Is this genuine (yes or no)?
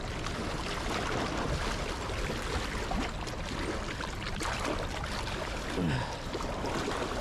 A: yes